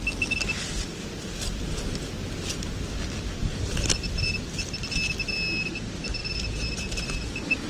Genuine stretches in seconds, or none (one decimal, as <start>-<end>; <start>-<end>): 0.0-3.4; 4.1-6.2; 6.8-7.7